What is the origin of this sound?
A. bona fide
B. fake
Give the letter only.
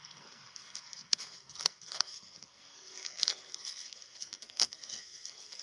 B